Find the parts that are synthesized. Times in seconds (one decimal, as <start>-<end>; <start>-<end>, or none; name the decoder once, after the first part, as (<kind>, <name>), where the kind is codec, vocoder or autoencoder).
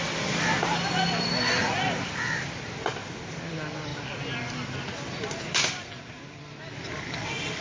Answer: 1.6-2.3 (vocoder, Vocos)